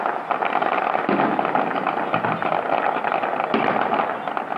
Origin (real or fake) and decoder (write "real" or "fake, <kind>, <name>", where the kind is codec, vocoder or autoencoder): real